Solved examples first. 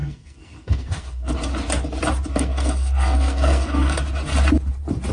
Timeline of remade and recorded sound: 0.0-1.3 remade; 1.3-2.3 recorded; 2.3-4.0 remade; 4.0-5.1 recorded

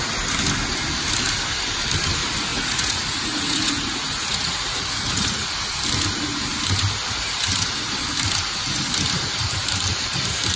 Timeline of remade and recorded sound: 0.0-2.5 recorded; 2.5-5.5 remade; 5.5-10.6 recorded